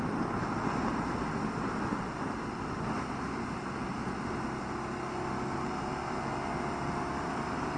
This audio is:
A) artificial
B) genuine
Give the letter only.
B